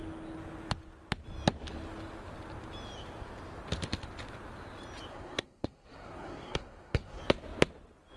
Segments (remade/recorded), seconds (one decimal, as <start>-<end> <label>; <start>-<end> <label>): 0.0-5.1 recorded; 5.1-7.2 remade; 7.2-8.2 recorded